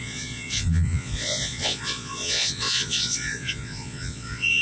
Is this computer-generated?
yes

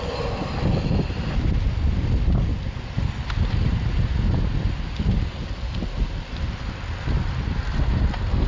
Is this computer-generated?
no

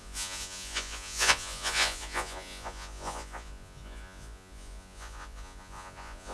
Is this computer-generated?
yes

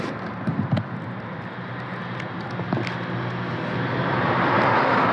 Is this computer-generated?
no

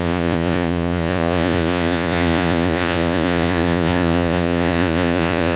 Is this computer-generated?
yes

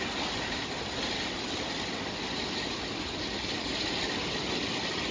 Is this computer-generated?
no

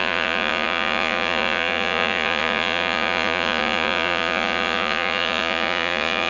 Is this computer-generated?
yes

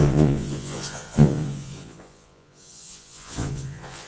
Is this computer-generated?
yes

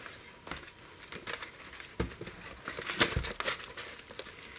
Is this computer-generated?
no